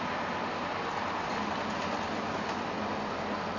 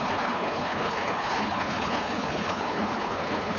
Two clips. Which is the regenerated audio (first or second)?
second